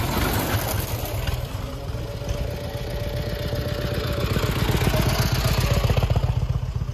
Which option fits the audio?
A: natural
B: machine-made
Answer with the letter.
A